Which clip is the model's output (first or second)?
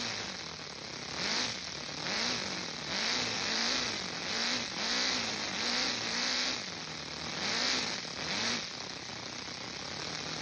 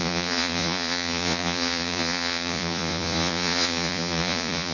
second